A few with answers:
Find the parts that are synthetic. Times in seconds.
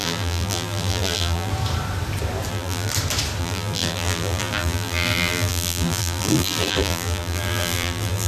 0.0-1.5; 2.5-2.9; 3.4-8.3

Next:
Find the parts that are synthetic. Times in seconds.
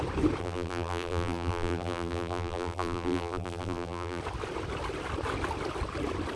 0.4-4.2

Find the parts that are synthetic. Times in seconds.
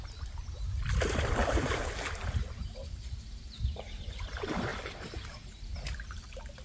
1.4-4.3; 4.7-5.6